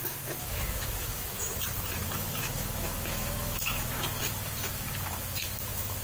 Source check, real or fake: fake